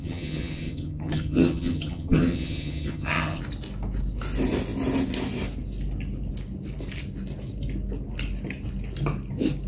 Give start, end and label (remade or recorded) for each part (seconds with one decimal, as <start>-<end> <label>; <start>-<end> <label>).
0.0-3.4 remade; 3.4-9.7 recorded